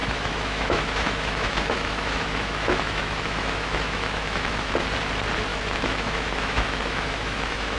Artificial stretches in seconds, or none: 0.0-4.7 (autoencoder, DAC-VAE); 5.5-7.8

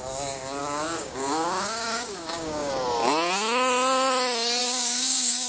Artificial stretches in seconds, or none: 0.6-2.7 (codec, DAC); 4.6-5.5